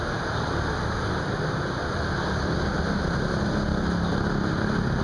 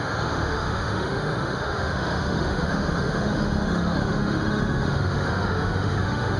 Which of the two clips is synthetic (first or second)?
second